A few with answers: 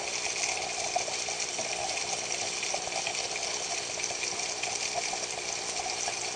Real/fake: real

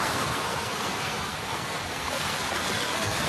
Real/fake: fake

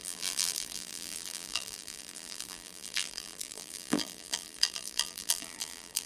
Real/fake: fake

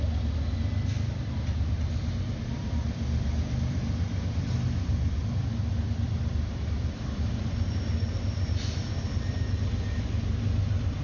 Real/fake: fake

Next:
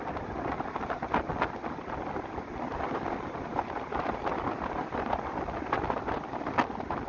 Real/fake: real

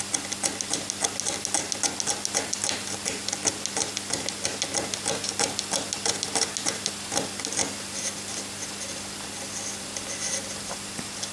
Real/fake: real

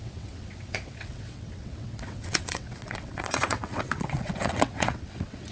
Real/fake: fake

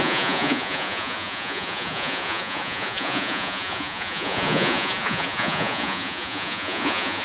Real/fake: fake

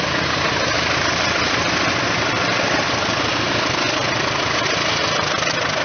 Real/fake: real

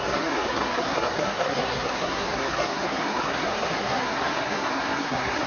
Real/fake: fake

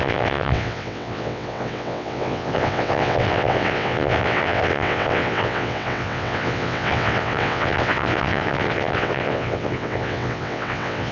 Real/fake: fake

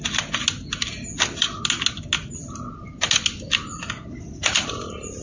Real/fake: real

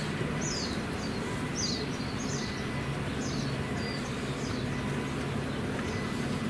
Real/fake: real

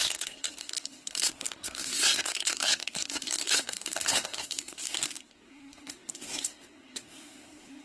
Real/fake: fake